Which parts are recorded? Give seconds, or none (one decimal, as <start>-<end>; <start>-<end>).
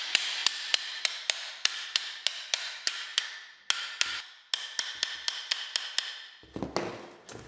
0.4-1.1; 3.1-7.5